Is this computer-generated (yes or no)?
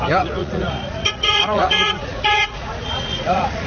yes